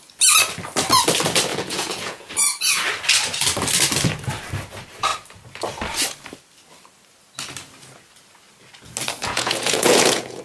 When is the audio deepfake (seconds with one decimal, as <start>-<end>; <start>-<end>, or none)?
1.5-2.3; 9.2-10.4

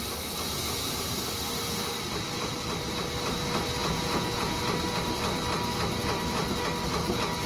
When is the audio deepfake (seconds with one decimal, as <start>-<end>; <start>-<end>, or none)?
3.8-4.6